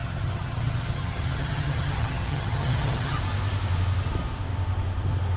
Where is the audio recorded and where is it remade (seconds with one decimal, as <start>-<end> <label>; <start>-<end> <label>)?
0.0-3.2 remade; 3.2-5.4 recorded